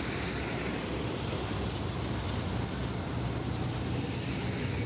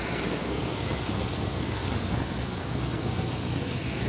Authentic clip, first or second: first